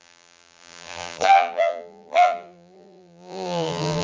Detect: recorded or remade remade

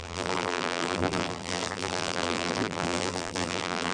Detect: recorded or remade remade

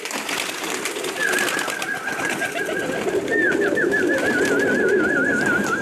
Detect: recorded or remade recorded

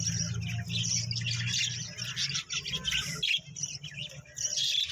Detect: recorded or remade recorded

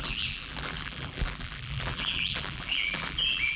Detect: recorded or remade remade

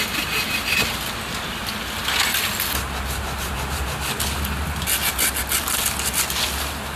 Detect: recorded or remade recorded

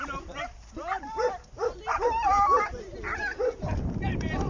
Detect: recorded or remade remade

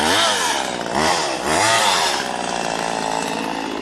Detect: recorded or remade recorded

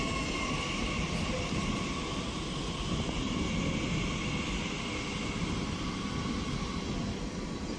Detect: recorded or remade recorded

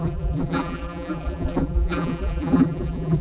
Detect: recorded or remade remade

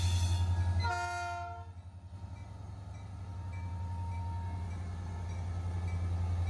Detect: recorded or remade recorded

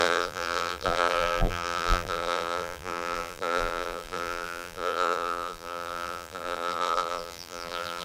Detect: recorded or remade remade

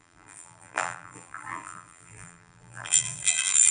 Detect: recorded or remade remade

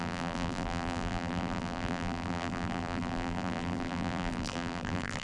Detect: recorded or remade remade